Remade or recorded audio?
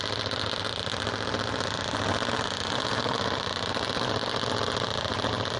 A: recorded